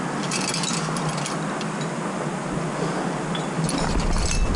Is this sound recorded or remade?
recorded